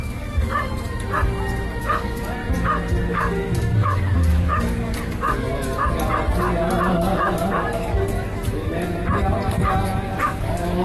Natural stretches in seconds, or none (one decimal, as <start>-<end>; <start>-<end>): 0.7-1.8; 2.4-3.0; 5.7-6.8; 9.0-9.7